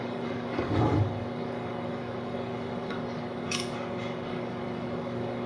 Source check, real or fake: fake